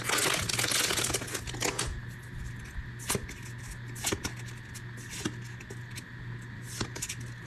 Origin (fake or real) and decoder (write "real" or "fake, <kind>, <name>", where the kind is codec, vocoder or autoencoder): real